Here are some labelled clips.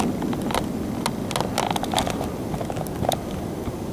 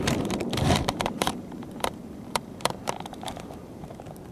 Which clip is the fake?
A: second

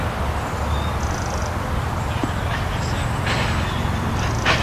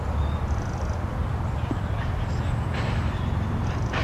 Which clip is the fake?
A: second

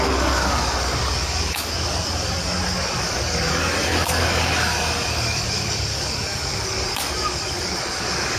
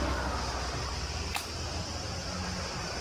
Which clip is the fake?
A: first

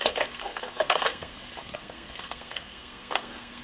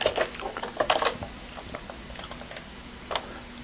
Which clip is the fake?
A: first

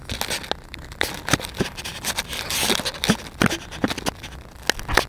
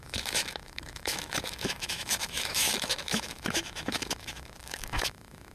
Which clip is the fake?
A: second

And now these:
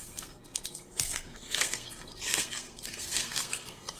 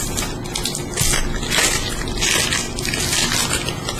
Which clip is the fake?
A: first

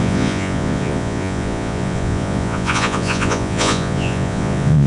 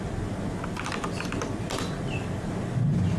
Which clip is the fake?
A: first